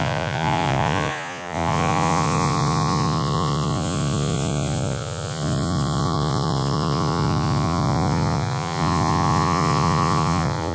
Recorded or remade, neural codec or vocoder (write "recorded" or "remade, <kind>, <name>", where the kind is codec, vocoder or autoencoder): remade, vocoder, Vocos